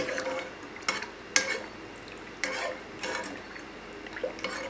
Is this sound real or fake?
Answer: real